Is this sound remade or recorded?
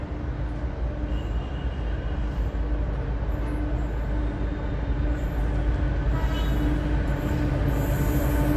recorded